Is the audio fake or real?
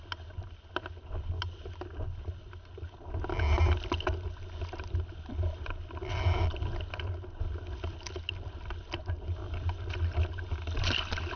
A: real